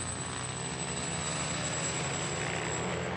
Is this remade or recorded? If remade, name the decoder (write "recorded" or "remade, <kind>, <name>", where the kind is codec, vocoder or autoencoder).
recorded